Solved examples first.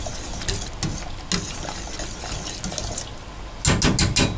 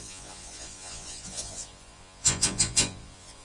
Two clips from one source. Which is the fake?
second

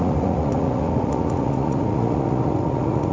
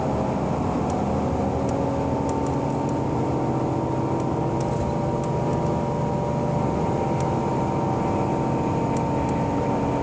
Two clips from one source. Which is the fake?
first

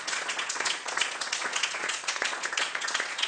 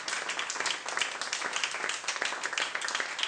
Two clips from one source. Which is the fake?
first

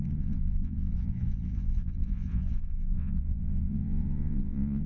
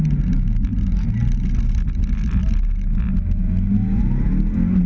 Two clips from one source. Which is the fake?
first